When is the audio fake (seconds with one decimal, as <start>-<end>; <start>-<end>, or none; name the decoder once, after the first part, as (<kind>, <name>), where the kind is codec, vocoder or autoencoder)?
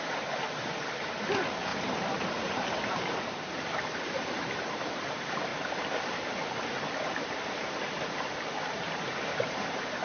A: 0.0-10.0 (vocoder, BigVGAN v2)